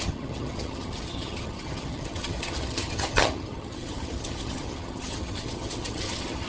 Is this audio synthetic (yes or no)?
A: yes